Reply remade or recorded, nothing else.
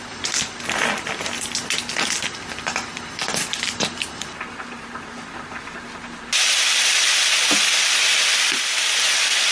recorded